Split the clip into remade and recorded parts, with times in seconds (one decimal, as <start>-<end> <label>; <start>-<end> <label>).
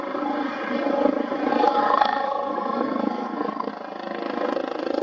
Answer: 0.0-1.5 recorded; 1.5-3.7 remade; 3.7-5.0 recorded